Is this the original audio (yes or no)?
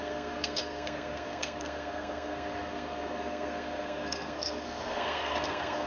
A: no